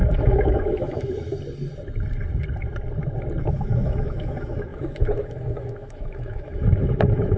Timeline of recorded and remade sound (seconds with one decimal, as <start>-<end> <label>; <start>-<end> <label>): 0.0-1.3 remade; 1.3-3.4 recorded; 3.4-7.4 remade